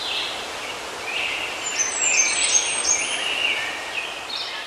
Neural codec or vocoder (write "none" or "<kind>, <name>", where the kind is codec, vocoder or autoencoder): none